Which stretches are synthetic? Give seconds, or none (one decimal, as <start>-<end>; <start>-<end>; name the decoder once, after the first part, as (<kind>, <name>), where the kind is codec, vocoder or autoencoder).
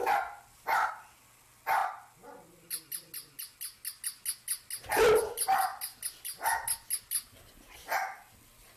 none